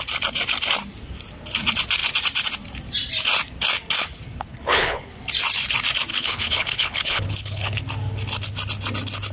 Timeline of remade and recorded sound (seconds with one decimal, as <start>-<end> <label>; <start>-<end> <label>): 0.0-4.5 recorded; 4.5-5.1 remade; 5.1-6.1 recorded; 6.1-7.8 remade; 7.8-9.3 recorded